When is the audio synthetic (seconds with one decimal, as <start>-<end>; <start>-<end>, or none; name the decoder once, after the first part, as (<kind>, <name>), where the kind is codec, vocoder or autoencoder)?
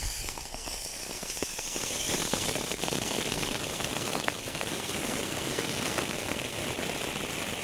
0.0-6.6 (codec, SNAC)